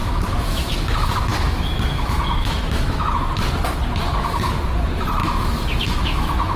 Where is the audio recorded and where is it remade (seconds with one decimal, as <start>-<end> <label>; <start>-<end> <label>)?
0.0-0.6 remade; 0.6-1.3 recorded; 1.3-3.3 remade; 3.3-5.2 recorded; 5.2-6.6 remade